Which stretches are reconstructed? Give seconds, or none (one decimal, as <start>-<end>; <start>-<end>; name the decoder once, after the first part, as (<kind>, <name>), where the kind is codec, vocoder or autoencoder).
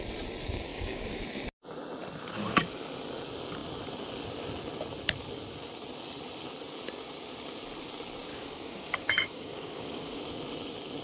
0.7-1.2 (codec, DAC); 8.3-10.2